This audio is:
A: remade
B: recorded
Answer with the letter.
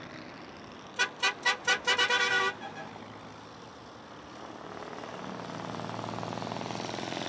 B